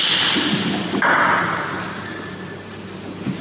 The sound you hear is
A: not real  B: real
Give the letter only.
B